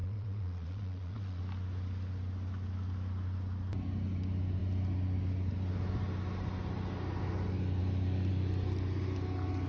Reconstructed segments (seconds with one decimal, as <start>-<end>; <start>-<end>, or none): 0.0-1.4